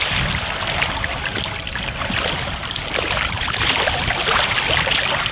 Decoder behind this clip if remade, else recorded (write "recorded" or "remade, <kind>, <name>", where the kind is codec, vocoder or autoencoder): recorded